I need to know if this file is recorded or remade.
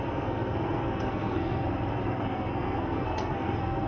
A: remade